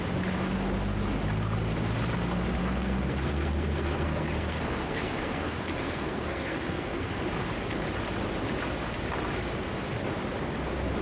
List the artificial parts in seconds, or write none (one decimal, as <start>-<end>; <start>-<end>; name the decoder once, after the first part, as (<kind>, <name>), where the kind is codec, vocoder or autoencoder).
2.6-7.2 (codec, SNAC)